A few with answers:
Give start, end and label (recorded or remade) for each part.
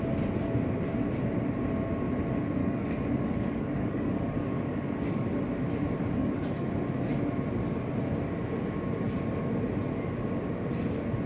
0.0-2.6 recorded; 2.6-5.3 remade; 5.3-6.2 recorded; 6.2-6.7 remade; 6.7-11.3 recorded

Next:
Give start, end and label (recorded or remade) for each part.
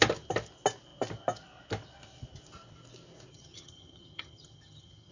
0.0-3.3 recorded; 3.3-5.1 remade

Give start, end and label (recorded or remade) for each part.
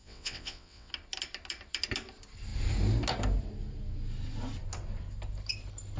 0.0-0.9 remade; 0.9-6.0 recorded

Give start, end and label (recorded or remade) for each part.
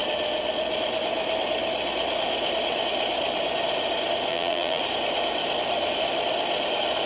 0.0-4.3 recorded; 4.3-4.8 remade; 4.8-7.1 recorded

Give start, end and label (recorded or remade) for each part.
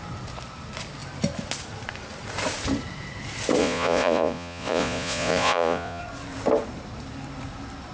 0.0-3.6 recorded; 3.6-6.0 remade; 6.0-7.9 recorded